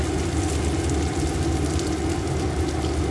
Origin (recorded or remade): recorded